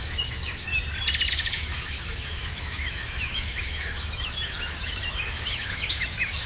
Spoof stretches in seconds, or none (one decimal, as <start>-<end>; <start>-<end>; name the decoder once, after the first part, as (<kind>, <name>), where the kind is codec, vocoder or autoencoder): 0.0-0.7 (autoencoder, DAC-VAE); 1.3-6.5